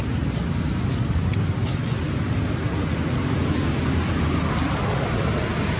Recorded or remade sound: recorded